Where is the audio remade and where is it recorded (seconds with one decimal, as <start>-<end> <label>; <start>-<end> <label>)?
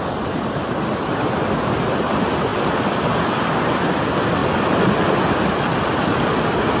0.0-6.8 recorded